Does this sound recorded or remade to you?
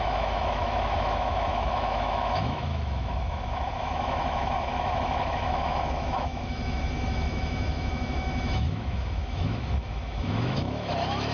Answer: remade